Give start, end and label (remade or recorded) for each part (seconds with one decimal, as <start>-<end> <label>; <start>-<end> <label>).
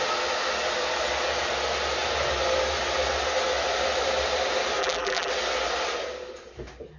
0.0-4.8 recorded; 4.8-5.3 remade; 5.3-7.0 recorded